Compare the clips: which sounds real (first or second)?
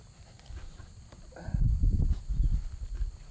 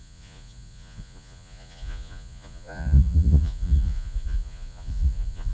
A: first